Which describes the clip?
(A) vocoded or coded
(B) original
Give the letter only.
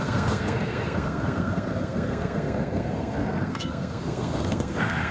A